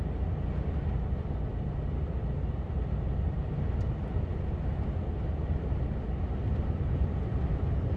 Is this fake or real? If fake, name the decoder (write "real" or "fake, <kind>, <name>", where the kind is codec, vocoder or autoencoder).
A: real